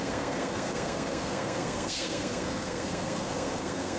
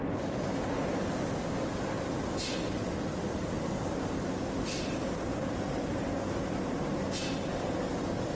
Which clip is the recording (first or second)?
second